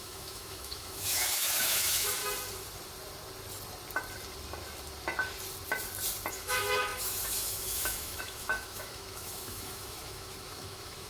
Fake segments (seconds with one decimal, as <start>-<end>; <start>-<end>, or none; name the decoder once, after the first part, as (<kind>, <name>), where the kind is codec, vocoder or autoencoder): 0.0-2.2 (autoencoder, DAC-VAE); 6.3-11.1